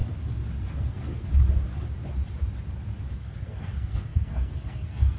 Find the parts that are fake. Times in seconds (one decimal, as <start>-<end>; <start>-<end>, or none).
0.7-1.3; 3.1-5.2